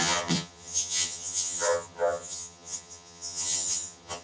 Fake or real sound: fake